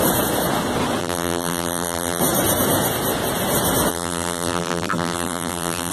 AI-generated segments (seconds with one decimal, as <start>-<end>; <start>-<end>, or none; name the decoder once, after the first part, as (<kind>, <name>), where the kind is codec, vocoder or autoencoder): 1.0-2.2 (vocoder, BigVGAN v2); 3.9-5.9